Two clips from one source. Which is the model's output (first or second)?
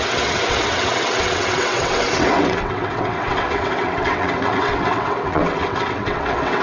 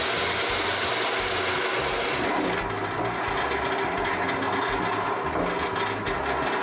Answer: first